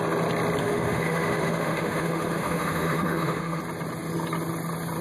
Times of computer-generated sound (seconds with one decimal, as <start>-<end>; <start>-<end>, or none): 0.6-3.6